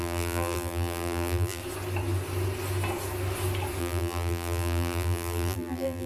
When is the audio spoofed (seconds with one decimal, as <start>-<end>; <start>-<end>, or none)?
0.0-1.6; 3.8-6.1